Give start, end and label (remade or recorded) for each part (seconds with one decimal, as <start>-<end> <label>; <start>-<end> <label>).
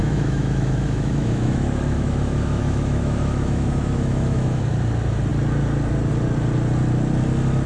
0.0-4.6 remade; 4.6-7.7 recorded